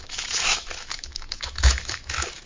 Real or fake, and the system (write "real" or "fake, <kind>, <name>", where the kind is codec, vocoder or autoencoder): fake, autoencoder, DAC-VAE